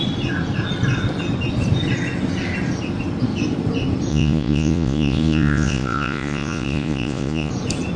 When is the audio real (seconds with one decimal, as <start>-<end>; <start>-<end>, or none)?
0.0-4.1; 7.5-8.0